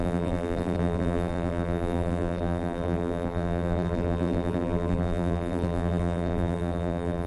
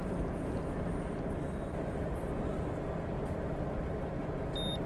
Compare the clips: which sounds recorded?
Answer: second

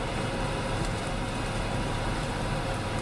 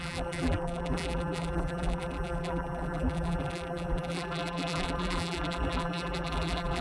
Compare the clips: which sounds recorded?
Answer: first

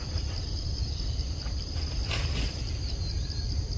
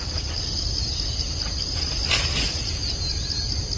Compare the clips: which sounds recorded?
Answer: second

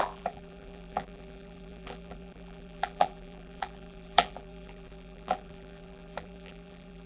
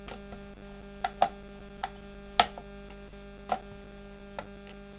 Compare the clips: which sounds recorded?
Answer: second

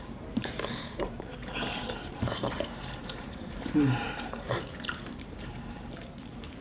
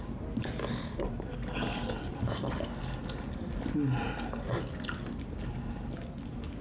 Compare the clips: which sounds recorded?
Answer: second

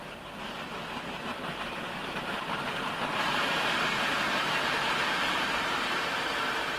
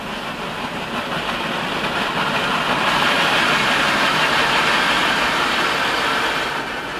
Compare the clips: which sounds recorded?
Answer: second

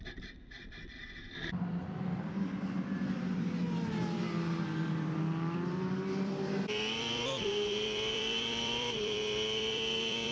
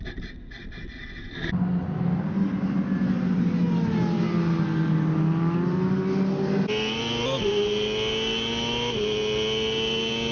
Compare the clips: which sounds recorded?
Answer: second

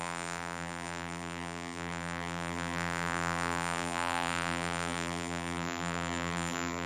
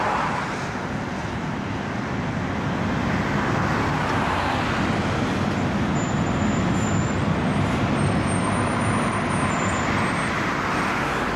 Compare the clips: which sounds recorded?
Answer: second